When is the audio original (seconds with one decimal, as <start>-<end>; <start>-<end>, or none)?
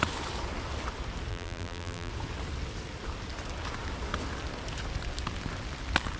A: 0.0-1.3; 2.1-6.2